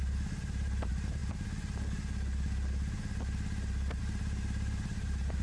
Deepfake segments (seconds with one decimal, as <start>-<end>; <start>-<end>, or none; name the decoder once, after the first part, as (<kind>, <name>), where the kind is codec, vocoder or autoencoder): 0.0-1.2 (vocoder, BigVGAN v2); 4.0-5.4